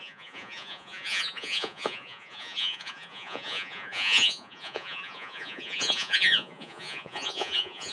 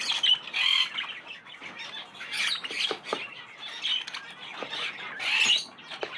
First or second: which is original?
second